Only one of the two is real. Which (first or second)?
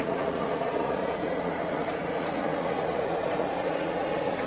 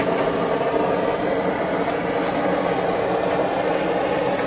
second